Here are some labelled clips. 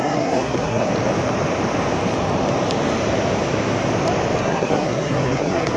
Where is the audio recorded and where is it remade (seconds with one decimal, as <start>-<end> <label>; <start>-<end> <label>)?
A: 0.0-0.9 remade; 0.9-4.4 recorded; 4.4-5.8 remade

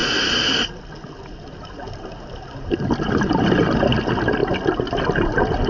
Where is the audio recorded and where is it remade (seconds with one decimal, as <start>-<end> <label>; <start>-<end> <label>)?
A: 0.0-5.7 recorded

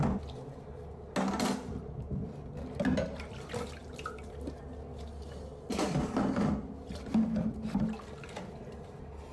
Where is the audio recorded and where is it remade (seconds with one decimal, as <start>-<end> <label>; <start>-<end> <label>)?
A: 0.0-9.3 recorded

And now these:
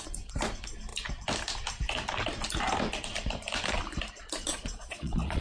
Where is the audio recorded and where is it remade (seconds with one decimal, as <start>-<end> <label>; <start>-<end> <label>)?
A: 0.0-4.5 recorded; 4.5-5.4 remade

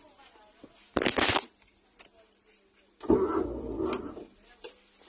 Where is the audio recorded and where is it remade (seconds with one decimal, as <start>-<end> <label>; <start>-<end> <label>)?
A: 0.0-5.1 recorded

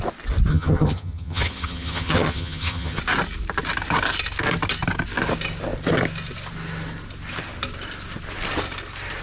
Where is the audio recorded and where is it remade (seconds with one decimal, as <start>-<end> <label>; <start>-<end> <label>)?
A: 0.0-0.5 recorded; 0.5-3.0 remade; 3.0-9.2 recorded

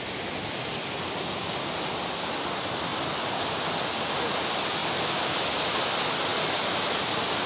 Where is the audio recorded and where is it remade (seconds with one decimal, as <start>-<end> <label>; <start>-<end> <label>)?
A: 0.0-0.6 recorded; 0.6-1.1 remade; 1.1-2.9 recorded; 2.9-4.2 remade; 4.2-4.8 recorded; 4.8-5.3 remade; 5.3-6.3 recorded; 6.3-7.0 remade; 7.0-7.5 recorded